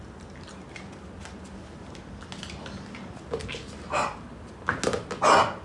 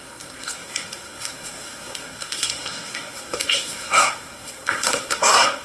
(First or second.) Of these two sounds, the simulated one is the second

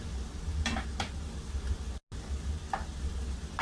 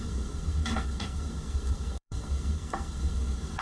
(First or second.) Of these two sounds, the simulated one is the second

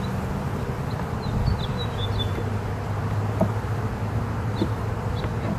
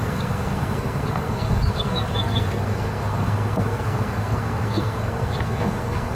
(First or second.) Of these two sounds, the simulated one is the second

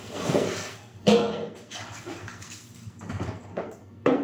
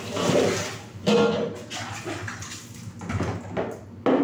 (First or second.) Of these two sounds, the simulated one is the first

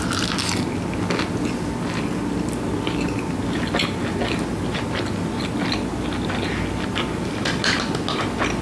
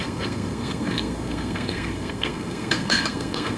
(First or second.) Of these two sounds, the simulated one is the second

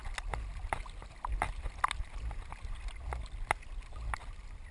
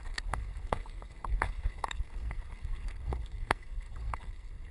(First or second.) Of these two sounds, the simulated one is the second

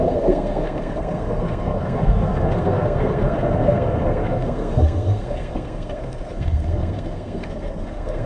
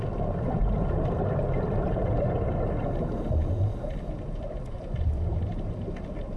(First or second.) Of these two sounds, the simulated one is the first